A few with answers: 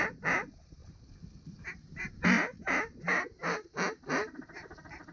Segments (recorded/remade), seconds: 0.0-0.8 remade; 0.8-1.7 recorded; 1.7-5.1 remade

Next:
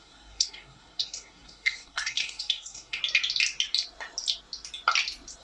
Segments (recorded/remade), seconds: 0.0-3.0 remade; 3.0-5.4 recorded

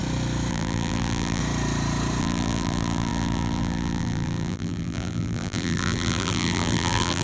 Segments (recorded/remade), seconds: 0.0-0.5 recorded; 0.5-1.4 remade; 1.4-2.2 recorded; 2.2-7.2 remade

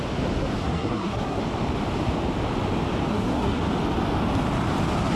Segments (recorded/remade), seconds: 0.0-0.6 recorded; 0.6-1.4 remade; 1.4-3.1 recorded; 3.1-3.6 remade; 3.6-5.2 recorded

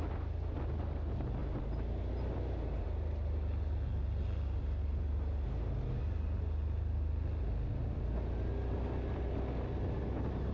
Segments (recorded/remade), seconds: 0.0-1.4 recorded; 1.4-2.1 remade; 2.1-10.5 recorded

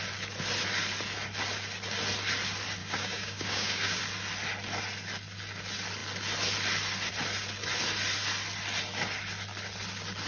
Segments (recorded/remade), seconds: 0.0-2.8 recorded; 2.8-4.0 remade; 4.0-10.3 recorded